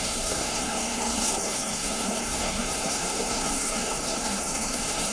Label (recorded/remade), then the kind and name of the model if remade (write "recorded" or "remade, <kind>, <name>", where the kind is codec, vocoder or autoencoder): remade, codec, SNAC